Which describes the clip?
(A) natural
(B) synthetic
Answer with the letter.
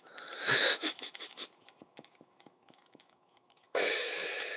B